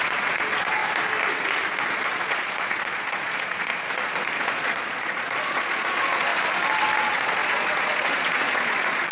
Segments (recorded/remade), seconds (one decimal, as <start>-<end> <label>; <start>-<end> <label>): 0.0-0.8 remade; 0.8-1.9 recorded; 1.9-3.7 remade; 3.7-4.4 recorded; 4.4-6.3 remade; 6.3-7.0 recorded; 7.0-9.1 remade